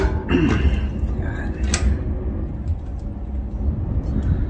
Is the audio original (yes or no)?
yes